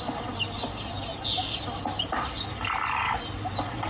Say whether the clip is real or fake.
real